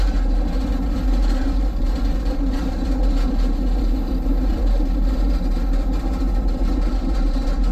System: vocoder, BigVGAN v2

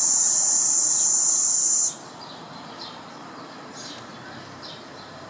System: vocoder, BigVGAN v2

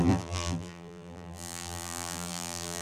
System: vocoder, BigVGAN v2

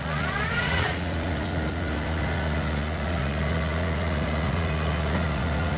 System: vocoder, Vocos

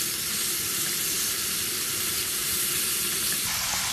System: none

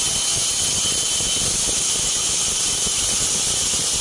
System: none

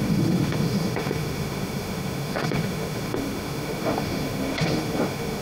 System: autoencoder, DAC-VAE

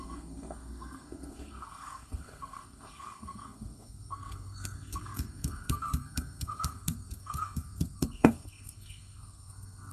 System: codec, SNAC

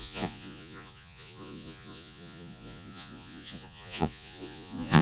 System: vocoder, Vocos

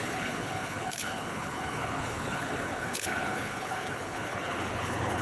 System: codec, HILCodec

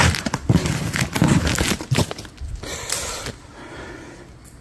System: none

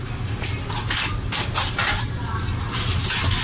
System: none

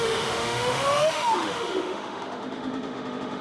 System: autoencoder, DAC-VAE